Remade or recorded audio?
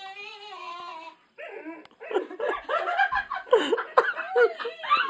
recorded